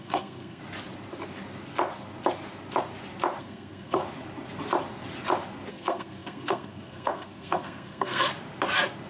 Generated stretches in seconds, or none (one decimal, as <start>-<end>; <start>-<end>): 0.0-0.6; 3.4-4.0; 5.7-8.3